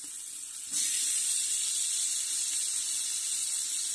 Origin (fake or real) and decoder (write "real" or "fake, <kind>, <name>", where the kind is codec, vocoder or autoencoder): real